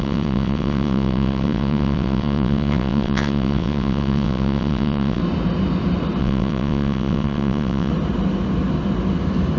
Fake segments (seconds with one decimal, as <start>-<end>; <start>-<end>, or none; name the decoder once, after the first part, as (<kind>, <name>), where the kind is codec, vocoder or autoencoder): 0.0-5.2 (vocoder, WaveNeXt); 6.2-7.9